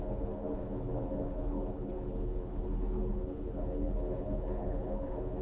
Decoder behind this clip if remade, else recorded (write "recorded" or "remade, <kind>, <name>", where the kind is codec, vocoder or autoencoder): remade, codec, HILCodec